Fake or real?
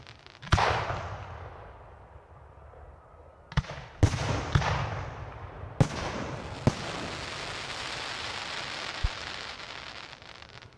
real